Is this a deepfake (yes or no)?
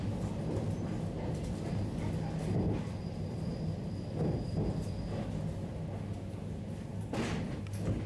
no